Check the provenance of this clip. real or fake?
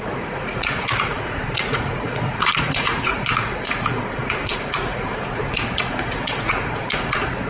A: fake